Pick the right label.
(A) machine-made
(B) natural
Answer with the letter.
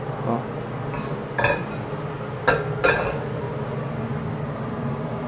B